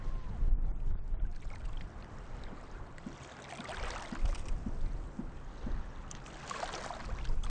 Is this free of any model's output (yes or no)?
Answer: yes